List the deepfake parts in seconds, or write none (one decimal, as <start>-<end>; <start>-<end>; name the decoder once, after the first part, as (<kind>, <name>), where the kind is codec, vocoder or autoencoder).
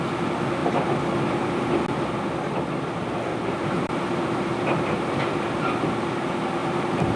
3.3-5.2 (vocoder, BigVGAN v2); 6.6-7.2